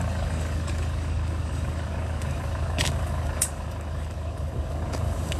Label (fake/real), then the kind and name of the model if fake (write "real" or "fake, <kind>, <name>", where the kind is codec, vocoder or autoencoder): fake, codec, DAC